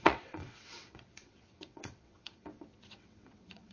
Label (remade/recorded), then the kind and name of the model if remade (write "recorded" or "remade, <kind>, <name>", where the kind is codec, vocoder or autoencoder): remade, vocoder, WaveNeXt